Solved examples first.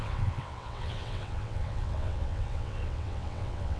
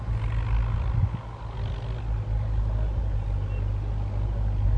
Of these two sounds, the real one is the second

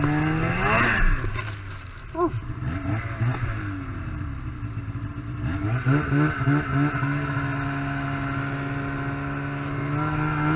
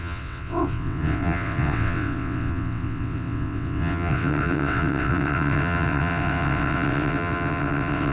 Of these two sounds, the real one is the first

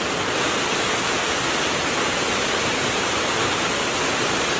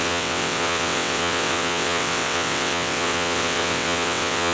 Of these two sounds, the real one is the first